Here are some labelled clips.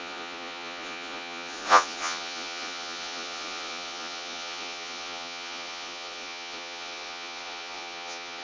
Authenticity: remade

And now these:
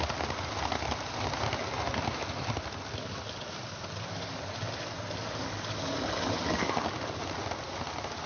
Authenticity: recorded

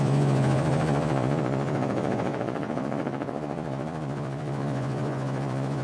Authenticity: remade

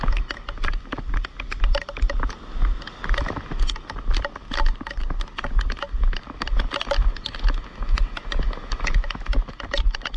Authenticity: recorded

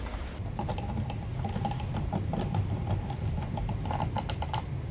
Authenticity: recorded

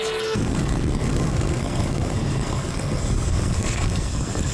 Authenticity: remade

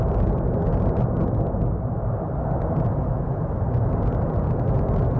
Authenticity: recorded